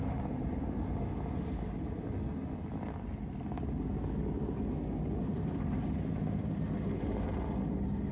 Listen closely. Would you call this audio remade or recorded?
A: recorded